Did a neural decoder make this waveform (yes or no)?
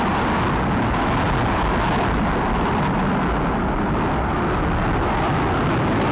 no